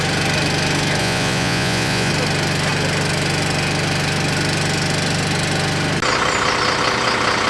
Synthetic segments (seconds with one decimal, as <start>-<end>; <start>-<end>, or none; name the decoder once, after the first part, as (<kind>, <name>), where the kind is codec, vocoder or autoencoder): 1.0-2.1 (vocoder, Vocos)